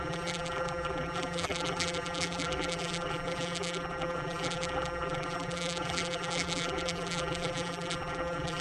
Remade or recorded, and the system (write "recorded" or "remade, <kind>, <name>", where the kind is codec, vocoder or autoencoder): remade, vocoder, BigVGAN v2